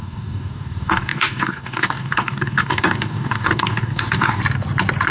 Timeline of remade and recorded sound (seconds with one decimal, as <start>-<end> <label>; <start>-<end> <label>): 0.0-4.4 remade; 4.4-5.1 recorded